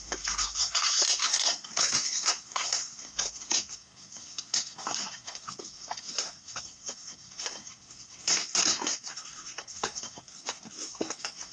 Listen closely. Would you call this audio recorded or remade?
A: remade